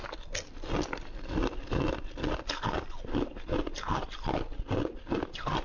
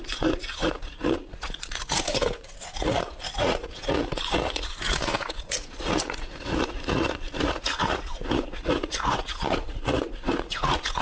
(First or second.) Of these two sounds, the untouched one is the first